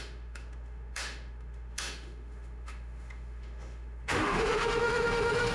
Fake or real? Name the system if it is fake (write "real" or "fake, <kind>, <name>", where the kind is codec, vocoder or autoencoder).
fake, autoencoder, DAC-VAE